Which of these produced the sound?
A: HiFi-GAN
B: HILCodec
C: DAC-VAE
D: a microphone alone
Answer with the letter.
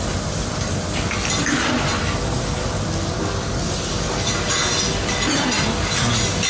D